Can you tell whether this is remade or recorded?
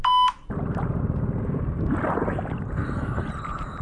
recorded